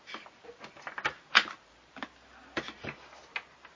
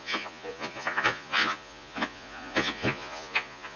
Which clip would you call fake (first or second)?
second